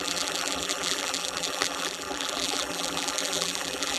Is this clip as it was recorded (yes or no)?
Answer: no